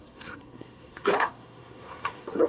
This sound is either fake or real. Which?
fake